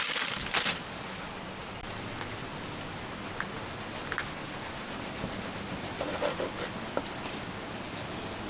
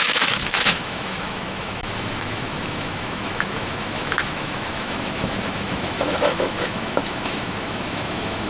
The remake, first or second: second